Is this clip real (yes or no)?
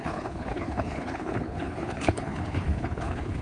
no